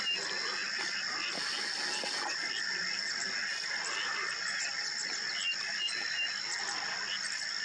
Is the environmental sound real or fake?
real